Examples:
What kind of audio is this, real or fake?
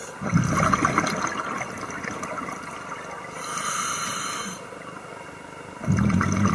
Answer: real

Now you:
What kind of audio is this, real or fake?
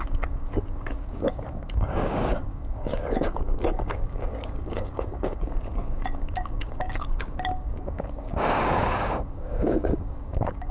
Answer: fake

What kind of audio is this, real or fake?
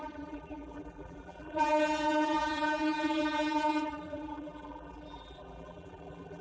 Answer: fake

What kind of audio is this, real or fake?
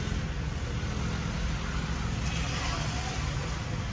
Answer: real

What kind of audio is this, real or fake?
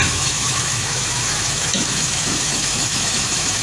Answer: fake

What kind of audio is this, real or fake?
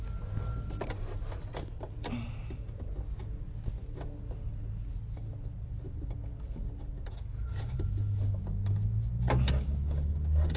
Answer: real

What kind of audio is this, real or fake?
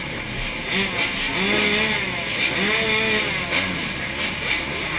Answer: real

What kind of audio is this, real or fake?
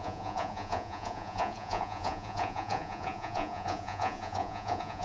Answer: fake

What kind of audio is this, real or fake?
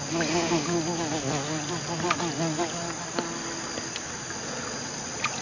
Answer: real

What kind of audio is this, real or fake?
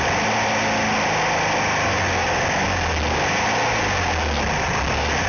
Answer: real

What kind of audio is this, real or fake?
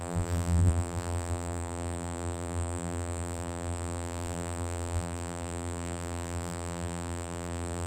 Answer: fake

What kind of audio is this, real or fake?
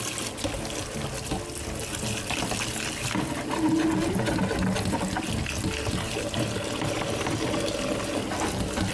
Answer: real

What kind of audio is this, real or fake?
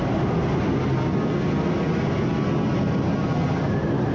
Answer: real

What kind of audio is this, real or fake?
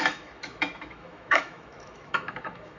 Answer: fake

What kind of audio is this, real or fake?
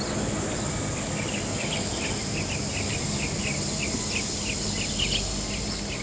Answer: real